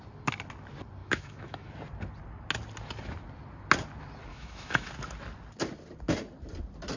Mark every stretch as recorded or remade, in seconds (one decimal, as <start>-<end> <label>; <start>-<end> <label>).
0.0-1.0 recorded; 1.0-1.7 remade; 1.7-4.3 recorded; 4.3-4.9 remade; 4.9-7.0 recorded